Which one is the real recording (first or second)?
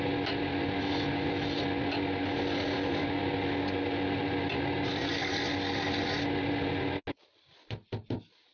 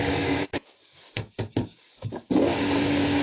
first